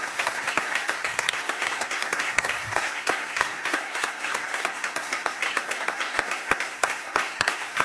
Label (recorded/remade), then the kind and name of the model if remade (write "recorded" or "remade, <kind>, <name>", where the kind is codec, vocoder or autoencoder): remade, codec, SNAC